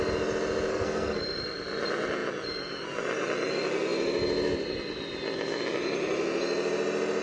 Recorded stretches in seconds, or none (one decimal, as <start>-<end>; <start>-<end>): 0.0-0.7; 1.2-7.2